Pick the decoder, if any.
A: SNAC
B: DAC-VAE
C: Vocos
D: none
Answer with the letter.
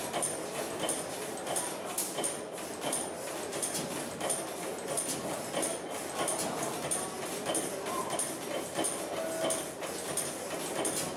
D